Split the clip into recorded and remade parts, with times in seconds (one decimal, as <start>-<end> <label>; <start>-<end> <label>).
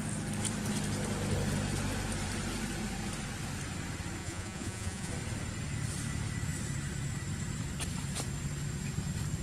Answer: 0.0-4.2 recorded; 4.2-5.1 remade; 5.1-9.4 recorded